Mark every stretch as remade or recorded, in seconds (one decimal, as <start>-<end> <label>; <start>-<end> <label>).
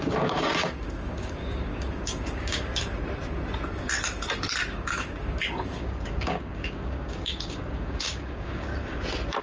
0.0-2.7 remade; 2.7-4.7 recorded; 4.7-8.7 remade; 8.7-9.4 recorded